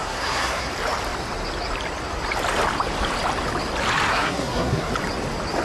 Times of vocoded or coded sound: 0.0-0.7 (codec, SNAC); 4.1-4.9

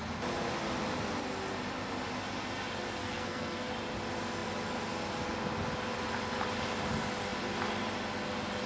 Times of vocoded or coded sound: 3.0-3.7 (codec, SNAC)

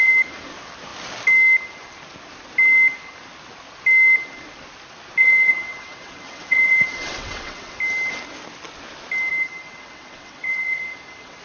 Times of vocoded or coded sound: 5.2-7.8 (vocoder, WaveNeXt); 9.3-11.4